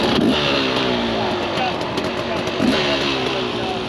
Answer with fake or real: real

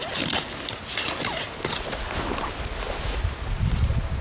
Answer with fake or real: real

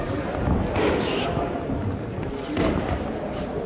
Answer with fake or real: real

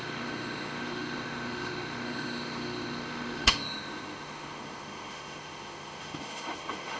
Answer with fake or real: fake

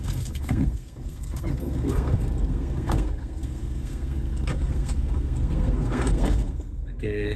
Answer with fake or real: fake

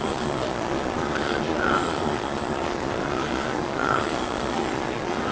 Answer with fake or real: fake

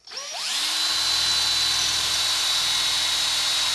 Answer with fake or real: real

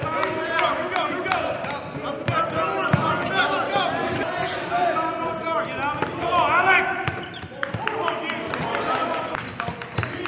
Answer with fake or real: real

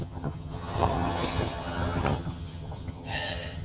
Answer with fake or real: fake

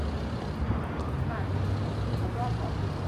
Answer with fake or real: real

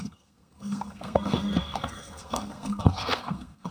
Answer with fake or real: fake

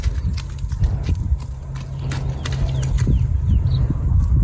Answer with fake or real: real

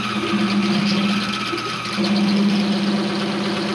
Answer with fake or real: real